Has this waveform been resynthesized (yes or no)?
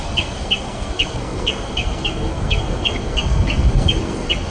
yes